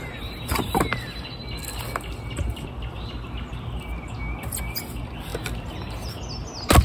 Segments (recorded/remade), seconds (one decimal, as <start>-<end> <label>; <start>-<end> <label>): 0.0-6.8 recorded